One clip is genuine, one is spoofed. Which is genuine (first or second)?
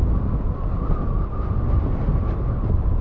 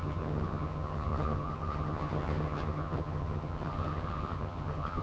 first